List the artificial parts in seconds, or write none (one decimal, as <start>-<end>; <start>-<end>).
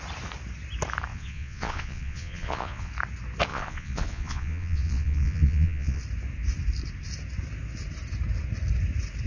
1.1-2.9; 3.5-6.0